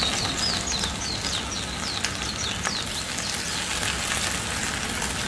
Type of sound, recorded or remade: recorded